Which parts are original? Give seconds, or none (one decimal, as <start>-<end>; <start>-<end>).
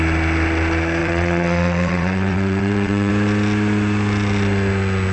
0.0-1.0; 3.1-5.1